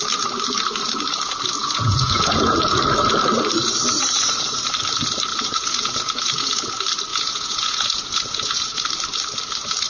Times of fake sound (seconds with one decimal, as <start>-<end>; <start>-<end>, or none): 1.6-2.8; 5.3-6.6; 7.1-8.8